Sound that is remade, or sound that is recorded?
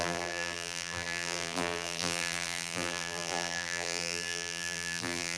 remade